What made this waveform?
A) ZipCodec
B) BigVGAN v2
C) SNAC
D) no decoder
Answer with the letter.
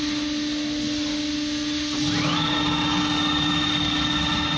D